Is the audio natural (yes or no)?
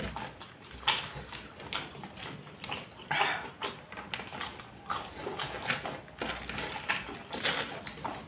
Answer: yes